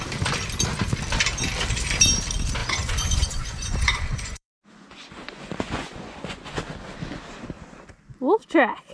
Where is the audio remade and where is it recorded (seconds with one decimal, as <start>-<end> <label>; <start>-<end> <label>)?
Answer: 0.0-2.6 recorded; 2.6-6.6 remade; 6.6-8.9 recorded